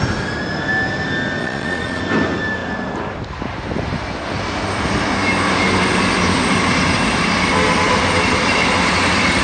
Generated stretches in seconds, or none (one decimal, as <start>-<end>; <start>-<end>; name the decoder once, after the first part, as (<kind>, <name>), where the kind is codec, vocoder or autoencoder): 1.4-2.0 (vocoder, Vocos)